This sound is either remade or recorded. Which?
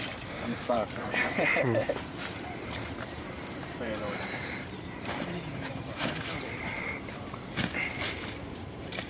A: remade